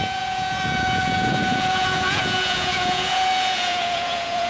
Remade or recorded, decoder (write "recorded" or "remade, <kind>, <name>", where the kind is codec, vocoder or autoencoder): remade, vocoder, Vocos